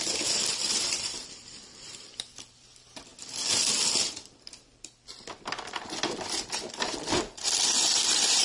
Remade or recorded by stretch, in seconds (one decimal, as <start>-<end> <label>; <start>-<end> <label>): 0.0-3.1 remade; 3.1-3.9 recorded; 3.9-8.4 remade